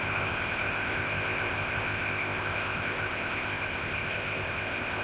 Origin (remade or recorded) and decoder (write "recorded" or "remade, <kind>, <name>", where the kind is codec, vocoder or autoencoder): remade, codec, ZipCodec